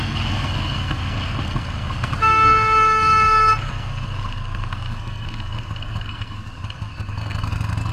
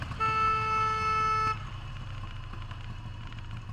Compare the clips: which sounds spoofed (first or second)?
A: first